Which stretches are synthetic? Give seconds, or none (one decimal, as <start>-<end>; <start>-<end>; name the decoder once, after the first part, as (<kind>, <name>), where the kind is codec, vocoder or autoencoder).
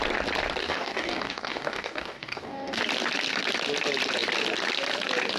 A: 0.6-2.8 (codec, DAC)